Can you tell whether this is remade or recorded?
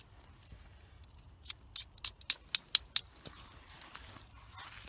recorded